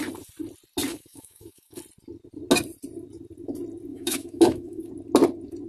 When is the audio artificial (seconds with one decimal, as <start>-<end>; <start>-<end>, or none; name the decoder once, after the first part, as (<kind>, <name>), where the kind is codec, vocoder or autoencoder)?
0.9-1.8 (autoencoder, DAC-VAE); 3.9-4.9